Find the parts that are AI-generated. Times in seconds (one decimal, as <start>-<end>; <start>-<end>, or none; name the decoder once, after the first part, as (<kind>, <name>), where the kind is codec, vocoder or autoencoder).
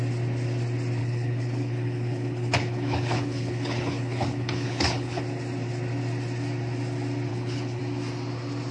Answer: 1.0-5.2 (codec, HILCodec); 7.3-7.8